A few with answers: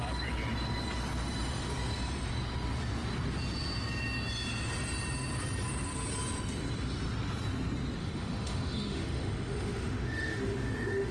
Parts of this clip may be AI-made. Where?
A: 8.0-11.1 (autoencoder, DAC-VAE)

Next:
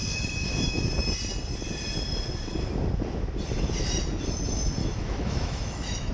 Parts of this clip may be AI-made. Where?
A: 0.0-0.9 (autoencoder, DAC-VAE); 4.8-6.1

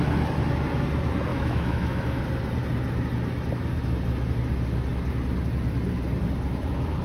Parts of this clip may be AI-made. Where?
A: 1.3-2.2 (autoencoder, DAC-VAE)

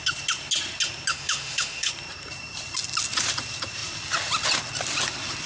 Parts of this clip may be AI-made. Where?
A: 1.1-1.9 (autoencoder, DAC-VAE)

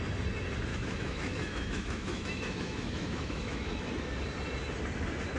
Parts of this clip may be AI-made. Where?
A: 0.7-3.9 (autoencoder, DAC-VAE)

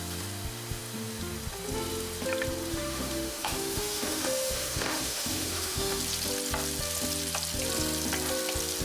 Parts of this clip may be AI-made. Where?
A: 2.7-6.0 (autoencoder, DAC-VAE)

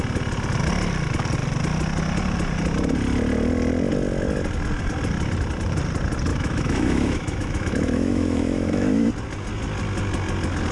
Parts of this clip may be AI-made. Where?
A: 6.3-9.1 (autoencoder, DAC-VAE)

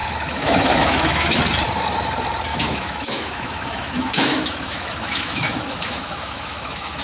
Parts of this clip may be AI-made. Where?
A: 0.0-1.4 (autoencoder, DAC-VAE); 2.5-7.0